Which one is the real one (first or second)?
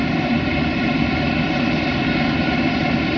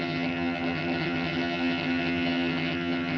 first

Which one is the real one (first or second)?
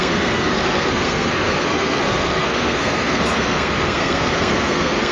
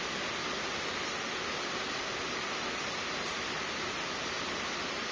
second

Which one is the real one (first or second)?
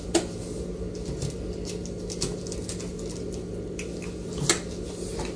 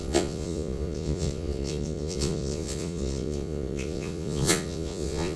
first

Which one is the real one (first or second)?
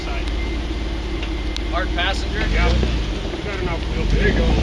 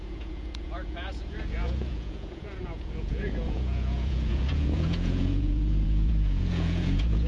first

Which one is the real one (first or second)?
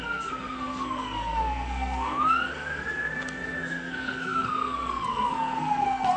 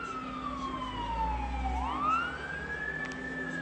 second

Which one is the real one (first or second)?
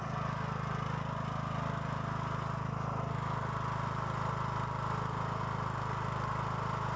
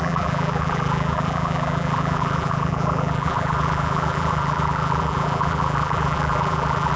first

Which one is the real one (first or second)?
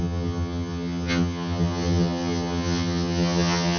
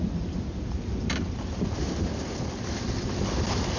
second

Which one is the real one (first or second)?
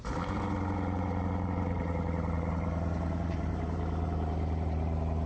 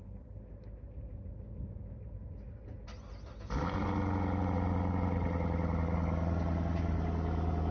second